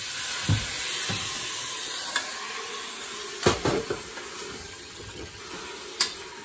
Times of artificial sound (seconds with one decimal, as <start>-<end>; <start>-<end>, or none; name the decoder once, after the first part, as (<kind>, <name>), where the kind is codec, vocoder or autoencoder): 4.6-5.4 (vocoder, HiFi-GAN)